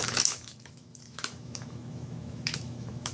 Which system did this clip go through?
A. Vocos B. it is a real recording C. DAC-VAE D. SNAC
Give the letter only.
C